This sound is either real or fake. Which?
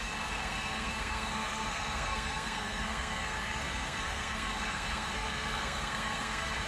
fake